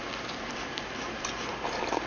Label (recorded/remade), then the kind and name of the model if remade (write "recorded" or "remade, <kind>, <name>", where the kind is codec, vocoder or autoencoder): remade, vocoder, BigVGAN v2